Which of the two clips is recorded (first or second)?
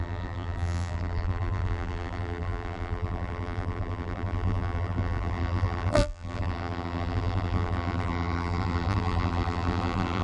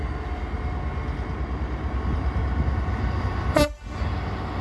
second